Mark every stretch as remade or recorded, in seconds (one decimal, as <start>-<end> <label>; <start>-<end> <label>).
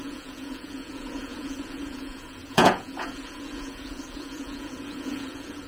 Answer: 0.0-5.7 remade